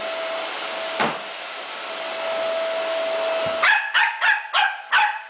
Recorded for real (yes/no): yes